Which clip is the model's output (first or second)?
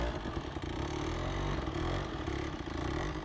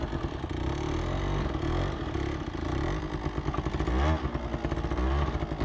first